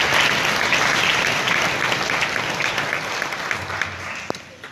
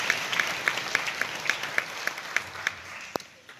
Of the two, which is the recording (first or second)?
first